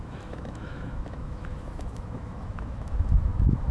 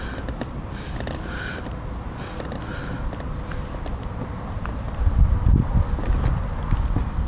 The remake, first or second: first